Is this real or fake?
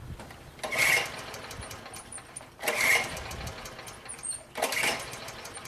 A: fake